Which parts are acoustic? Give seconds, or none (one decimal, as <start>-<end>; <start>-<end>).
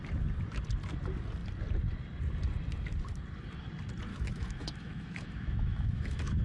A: 0.0-4.1